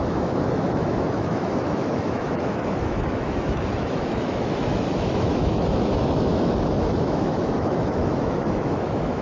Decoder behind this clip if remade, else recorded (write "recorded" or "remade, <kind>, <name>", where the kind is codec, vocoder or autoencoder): remade, autoencoder, DAC-VAE